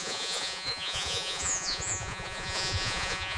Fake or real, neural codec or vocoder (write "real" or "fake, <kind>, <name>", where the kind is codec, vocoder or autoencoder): fake, vocoder, Vocos